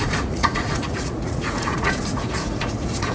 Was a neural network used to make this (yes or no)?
yes